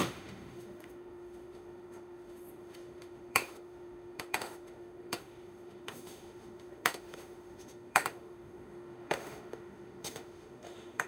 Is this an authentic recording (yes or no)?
no